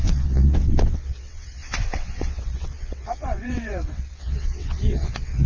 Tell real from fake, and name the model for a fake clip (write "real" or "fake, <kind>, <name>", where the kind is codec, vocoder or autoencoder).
fake, vocoder, WaveNeXt